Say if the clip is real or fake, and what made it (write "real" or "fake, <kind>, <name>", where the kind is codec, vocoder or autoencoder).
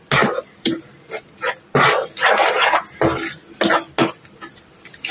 real